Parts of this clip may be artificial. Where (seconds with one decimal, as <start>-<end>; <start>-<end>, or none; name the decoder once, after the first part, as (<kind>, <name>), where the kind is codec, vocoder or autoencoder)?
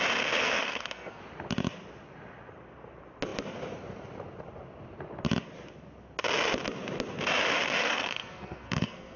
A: 0.4-1.2 (codec, SNAC); 7.8-9.2